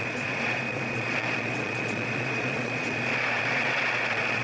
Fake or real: fake